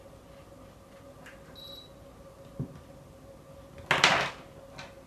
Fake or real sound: real